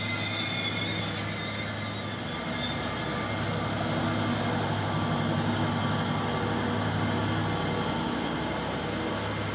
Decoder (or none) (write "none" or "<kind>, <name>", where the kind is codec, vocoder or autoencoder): none